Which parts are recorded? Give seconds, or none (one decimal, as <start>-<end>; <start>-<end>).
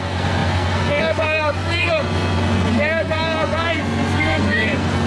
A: none